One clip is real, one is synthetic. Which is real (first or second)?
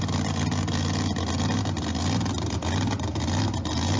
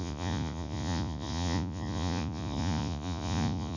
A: first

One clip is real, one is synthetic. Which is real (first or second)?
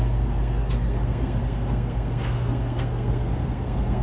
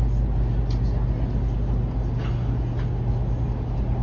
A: second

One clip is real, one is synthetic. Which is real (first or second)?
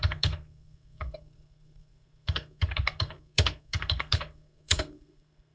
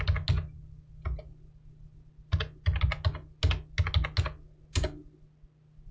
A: second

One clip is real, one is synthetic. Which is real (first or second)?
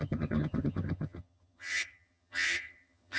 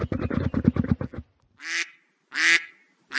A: second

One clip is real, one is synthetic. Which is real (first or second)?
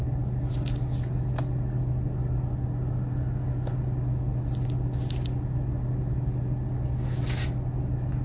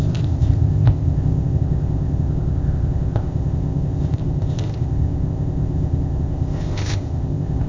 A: first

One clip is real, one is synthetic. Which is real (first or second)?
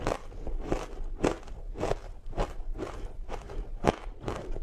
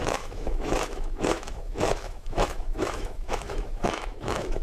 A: first